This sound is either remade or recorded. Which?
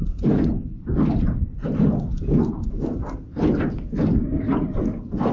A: recorded